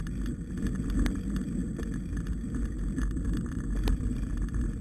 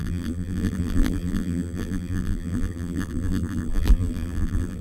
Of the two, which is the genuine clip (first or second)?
first